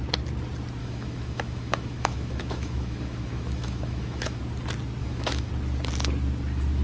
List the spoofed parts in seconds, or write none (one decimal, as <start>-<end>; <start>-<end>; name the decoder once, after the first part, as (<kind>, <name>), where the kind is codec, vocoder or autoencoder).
0.8-4.4 (autoencoder, DAC-VAE); 5.0-5.5